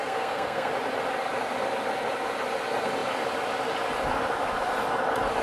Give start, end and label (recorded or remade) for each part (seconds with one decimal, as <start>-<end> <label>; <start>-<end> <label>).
0.0-0.7 remade; 0.7-5.4 recorded